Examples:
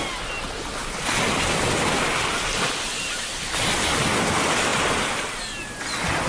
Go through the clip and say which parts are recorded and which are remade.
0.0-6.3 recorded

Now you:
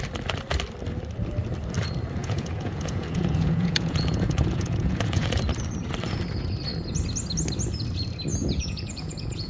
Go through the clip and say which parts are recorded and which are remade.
0.0-2.2 recorded; 2.2-5.4 remade; 5.4-8.3 recorded; 8.3-9.5 remade

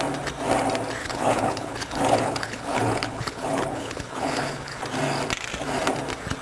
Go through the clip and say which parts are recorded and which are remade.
0.0-1.0 recorded; 1.0-4.8 remade; 4.8-6.4 recorded